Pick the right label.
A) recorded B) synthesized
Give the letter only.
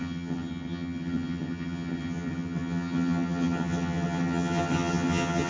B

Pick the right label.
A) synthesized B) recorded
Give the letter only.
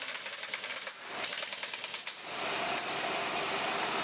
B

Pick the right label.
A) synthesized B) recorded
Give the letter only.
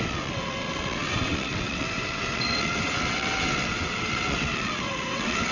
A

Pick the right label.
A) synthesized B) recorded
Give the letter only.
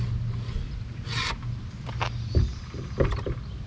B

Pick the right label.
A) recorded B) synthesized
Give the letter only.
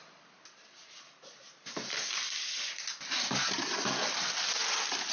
A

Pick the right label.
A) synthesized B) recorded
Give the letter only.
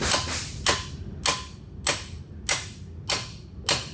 B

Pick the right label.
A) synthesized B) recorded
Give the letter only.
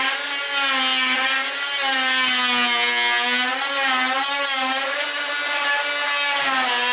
B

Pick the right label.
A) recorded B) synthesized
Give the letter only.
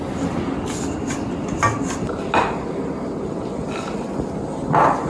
A